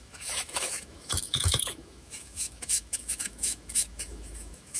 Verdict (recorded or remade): remade